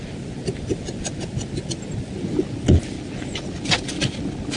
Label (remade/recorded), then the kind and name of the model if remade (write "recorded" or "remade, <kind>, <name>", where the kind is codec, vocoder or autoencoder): recorded